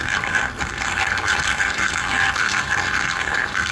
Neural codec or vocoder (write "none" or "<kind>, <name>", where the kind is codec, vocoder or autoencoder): codec, SNAC